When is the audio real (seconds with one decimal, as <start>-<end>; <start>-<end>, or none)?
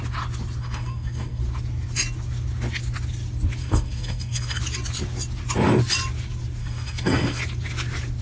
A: 0.0-0.6; 1.4-3.6; 4.6-6.6; 7.4-8.2